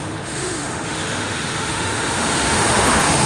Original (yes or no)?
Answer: no